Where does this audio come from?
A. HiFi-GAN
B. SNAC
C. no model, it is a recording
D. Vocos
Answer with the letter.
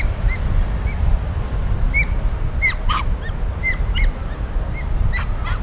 C